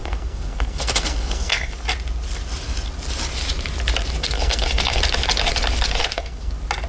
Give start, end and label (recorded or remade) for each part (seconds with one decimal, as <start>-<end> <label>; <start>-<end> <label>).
0.0-1.7 remade; 1.7-4.2 recorded; 4.2-5.0 remade; 5.0-6.0 recorded; 6.0-6.5 remade; 6.5-6.9 recorded